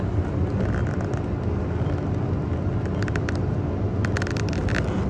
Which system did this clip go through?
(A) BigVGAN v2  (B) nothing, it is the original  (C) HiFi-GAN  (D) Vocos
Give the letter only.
B